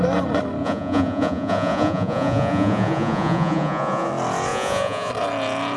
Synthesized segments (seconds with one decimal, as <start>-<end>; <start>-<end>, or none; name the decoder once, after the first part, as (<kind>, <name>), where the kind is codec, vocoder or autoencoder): 0.6-4.1 (vocoder, Vocos); 4.5-5.1